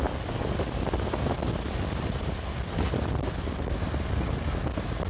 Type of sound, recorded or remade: recorded